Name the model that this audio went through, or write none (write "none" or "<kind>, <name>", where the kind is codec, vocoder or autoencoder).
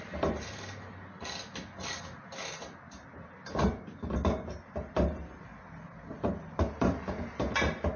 none